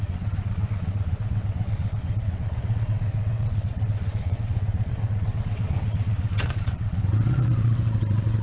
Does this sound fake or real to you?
fake